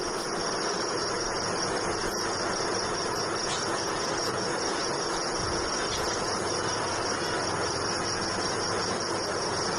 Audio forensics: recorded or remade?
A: remade